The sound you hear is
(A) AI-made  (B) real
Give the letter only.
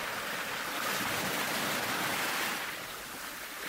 B